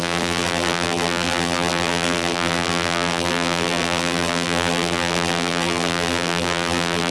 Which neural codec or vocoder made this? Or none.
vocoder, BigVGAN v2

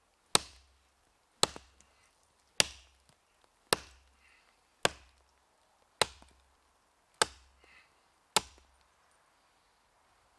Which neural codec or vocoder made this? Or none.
none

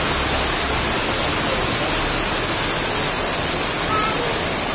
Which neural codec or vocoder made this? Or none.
none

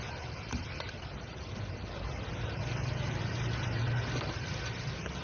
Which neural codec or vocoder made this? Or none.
vocoder, BigVGAN v2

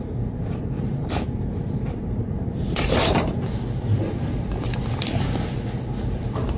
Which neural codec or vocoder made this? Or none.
vocoder, BigVGAN v2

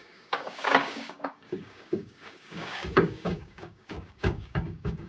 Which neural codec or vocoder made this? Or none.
codec, DAC